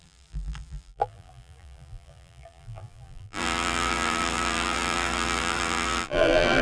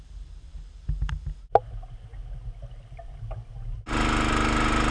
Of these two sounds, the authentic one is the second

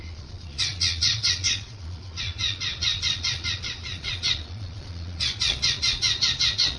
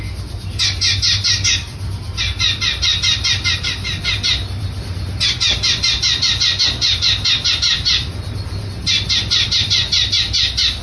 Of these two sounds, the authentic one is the second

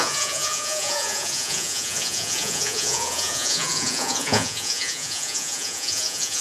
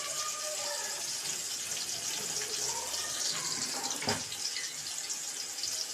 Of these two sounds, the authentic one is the second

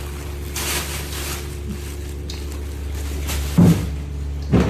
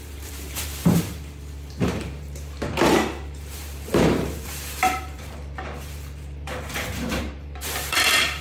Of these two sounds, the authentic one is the first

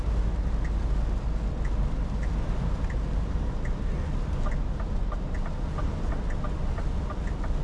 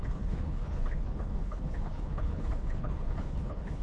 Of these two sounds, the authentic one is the first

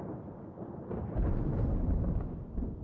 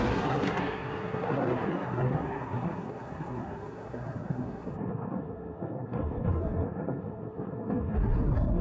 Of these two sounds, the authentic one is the first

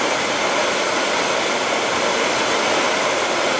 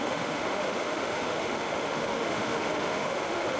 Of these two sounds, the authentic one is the first